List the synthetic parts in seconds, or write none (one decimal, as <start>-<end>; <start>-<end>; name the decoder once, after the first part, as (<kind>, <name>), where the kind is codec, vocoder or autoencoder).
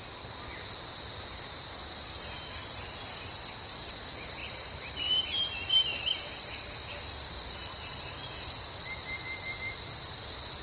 4.4-4.9 (vocoder, BigVGAN v2)